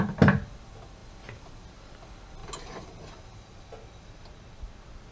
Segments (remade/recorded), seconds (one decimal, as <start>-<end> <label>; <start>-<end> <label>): 0.0-5.1 recorded